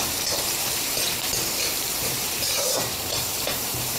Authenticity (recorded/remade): remade